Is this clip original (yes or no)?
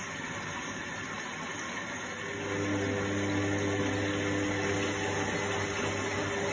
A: yes